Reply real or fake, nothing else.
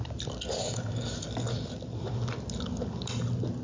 real